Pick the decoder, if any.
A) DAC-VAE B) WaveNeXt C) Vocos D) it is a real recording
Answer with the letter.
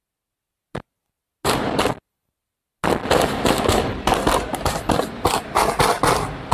D